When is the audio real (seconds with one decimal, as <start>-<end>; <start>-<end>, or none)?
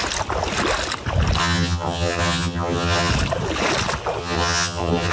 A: 0.0-1.4; 3.1-4.2